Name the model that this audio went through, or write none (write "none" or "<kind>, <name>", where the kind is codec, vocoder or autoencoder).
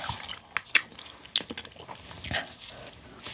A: none